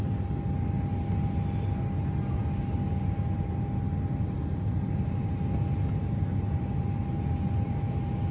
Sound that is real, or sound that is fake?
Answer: real